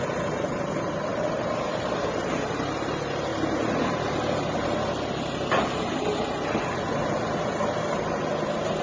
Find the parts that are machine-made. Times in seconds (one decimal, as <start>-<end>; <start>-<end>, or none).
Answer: none